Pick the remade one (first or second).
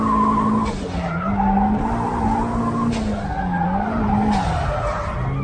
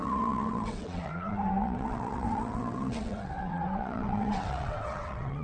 second